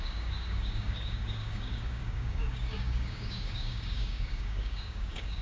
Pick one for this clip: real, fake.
fake